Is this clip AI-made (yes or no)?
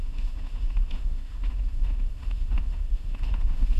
yes